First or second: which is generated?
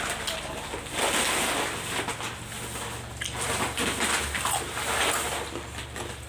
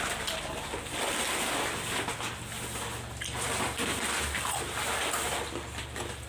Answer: second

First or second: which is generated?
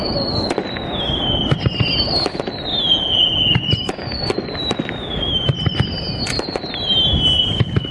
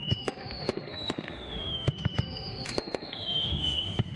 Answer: second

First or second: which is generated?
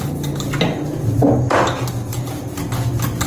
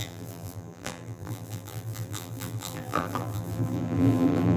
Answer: second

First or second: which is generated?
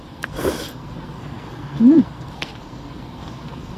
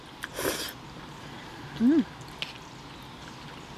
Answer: first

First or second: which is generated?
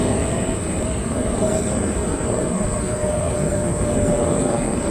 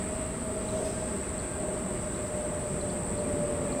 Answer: first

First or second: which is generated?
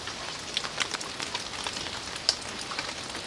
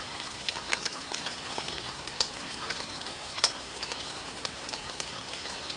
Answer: second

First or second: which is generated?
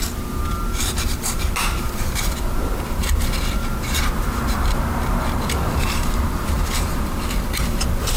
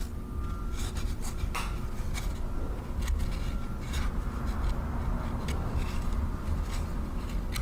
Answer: first